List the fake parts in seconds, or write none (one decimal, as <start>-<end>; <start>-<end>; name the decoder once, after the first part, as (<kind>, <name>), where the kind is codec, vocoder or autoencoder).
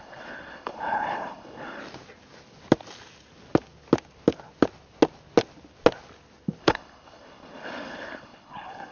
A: 0.0-1.8 (codec, HILCodec); 6.6-8.9